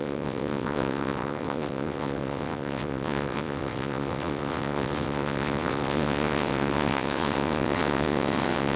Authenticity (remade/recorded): remade